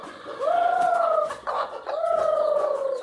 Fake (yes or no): yes